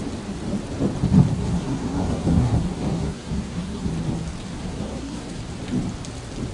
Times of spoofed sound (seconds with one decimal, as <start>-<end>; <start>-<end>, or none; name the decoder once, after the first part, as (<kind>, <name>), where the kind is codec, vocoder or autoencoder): 1.3-3.9 (codec, SNAC); 4.6-5.4